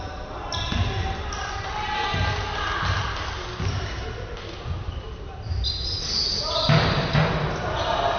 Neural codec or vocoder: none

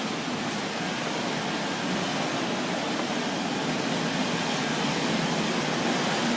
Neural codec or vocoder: none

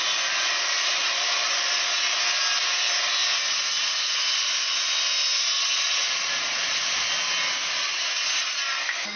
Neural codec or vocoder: none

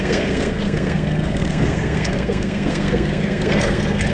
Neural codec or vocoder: codec, SNAC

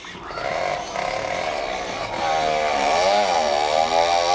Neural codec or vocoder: none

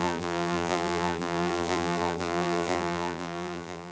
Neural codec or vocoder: vocoder, BigVGAN v2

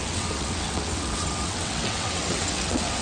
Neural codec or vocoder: vocoder, WaveNeXt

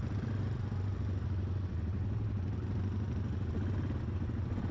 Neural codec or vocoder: none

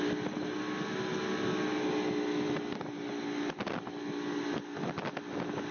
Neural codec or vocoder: none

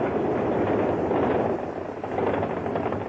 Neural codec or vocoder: none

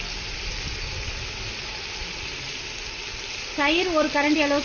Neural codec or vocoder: none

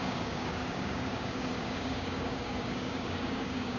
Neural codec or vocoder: codec, DAC